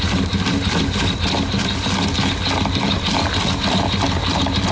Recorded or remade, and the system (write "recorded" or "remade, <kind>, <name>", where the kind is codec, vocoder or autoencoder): recorded